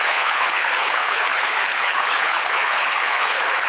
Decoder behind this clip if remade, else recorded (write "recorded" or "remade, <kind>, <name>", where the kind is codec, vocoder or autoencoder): remade, codec, HILCodec